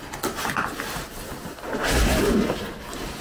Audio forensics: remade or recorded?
recorded